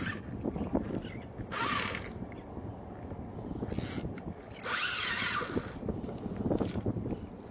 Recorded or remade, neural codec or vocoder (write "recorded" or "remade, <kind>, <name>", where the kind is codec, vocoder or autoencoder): recorded